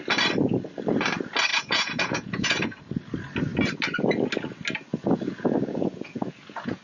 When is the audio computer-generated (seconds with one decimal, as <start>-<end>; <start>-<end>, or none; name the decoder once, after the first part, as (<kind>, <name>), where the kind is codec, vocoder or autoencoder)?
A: 1.5-2.8 (vocoder, Vocos); 4.9-6.8

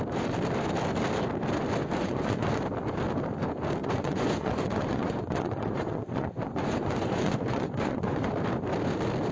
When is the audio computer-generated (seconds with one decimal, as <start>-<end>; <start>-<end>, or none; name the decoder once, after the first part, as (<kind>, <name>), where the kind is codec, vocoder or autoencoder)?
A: 1.8-2.6 (vocoder, Vocos); 3.8-8.3

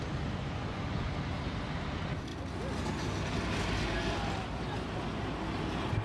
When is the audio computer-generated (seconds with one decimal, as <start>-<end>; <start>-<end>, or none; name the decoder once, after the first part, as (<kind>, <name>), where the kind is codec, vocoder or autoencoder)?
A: 0.4-1.1 (vocoder, Vocos)

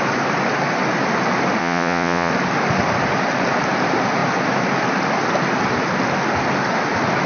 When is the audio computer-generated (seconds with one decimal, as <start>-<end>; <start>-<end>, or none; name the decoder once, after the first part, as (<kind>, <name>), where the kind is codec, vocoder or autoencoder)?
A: 1.6-2.3 (vocoder, Vocos)